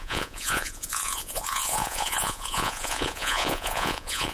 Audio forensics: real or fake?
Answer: fake